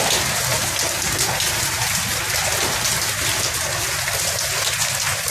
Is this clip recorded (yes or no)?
yes